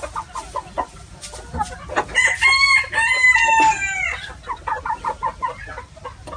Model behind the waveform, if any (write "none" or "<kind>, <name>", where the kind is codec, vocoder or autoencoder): none